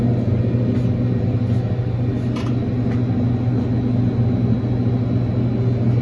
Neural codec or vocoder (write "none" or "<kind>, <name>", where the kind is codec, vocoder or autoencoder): none